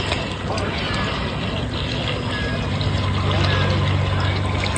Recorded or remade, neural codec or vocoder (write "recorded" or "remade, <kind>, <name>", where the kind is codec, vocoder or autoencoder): recorded